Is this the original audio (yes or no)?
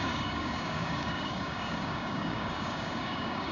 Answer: no